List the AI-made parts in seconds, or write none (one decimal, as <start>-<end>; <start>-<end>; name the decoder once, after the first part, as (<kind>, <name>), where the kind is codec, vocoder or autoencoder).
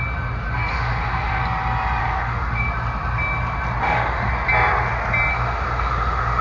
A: 0.7-1.4 (autoencoder, DAC-VAE); 2.0-2.7; 3.8-4.3; 5.3-6.4